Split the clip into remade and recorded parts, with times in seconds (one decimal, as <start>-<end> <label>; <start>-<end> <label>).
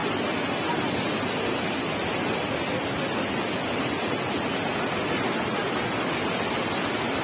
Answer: 0.0-7.2 recorded